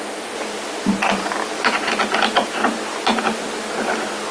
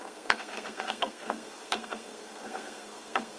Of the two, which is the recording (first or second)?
first